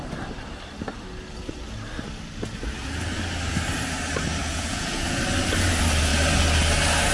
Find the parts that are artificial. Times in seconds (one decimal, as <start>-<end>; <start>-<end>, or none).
4.4-5.2

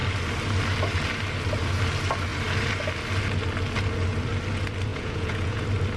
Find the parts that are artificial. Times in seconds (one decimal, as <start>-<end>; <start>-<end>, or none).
4.9-5.6

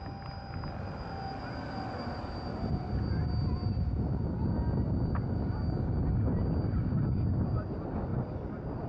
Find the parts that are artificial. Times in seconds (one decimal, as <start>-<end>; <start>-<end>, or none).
none

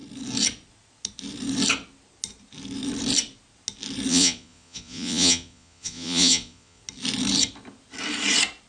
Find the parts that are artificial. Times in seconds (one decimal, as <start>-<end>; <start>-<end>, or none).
4.1-6.8

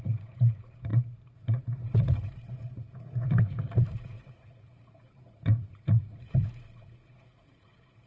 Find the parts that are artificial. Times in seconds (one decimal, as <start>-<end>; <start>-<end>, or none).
0.0-8.1

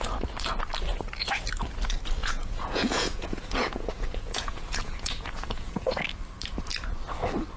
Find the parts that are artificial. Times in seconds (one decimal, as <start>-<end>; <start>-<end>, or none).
2.2-6.0

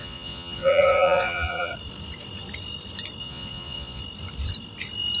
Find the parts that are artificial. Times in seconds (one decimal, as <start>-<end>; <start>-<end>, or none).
0.0-1.7; 3.2-4.0